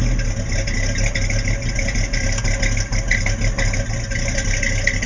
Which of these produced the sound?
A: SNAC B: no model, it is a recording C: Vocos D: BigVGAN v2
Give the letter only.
B